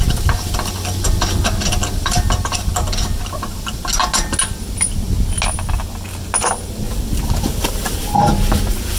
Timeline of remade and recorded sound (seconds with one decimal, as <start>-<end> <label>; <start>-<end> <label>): 0.0-9.0 recorded